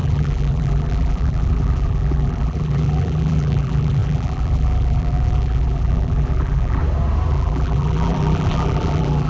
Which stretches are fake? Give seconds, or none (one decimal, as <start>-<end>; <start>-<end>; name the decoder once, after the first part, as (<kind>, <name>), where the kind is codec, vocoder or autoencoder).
0.0-6.8 (vocoder, BigVGAN v2); 7.3-9.3